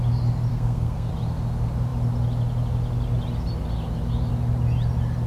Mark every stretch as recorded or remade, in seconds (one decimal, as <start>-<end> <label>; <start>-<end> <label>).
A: 0.0-0.5 recorded; 0.5-1.1 remade; 1.1-5.3 recorded